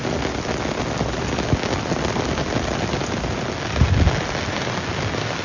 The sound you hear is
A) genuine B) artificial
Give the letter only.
A